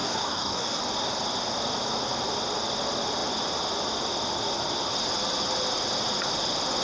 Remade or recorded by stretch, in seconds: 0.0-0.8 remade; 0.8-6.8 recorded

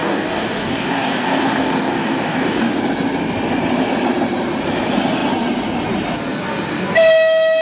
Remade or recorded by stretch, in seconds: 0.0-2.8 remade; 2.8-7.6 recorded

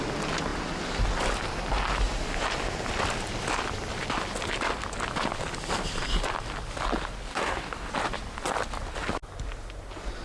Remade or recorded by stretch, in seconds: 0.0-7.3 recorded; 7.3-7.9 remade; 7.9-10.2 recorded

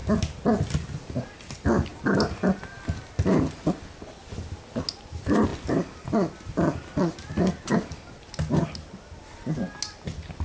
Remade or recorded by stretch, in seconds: 0.0-10.4 recorded

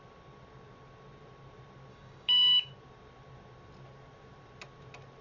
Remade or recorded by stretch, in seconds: 0.0-1.9 recorded; 1.9-2.7 remade; 2.7-5.2 recorded